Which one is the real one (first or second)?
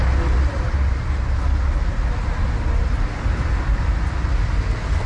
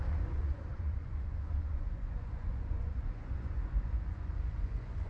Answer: first